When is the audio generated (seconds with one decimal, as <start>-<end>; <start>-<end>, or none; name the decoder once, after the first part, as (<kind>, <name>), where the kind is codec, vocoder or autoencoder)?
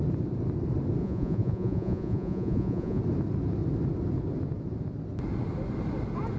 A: 1.0-3.0 (vocoder, Vocos)